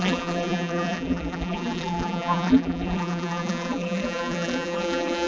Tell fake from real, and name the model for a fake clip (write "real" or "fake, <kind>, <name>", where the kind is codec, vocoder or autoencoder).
fake, vocoder, BigVGAN v2